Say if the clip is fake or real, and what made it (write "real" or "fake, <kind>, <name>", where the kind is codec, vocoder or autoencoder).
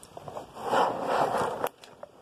fake, vocoder, BigVGAN v2